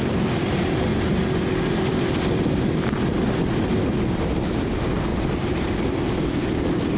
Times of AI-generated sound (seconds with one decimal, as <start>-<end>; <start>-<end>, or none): none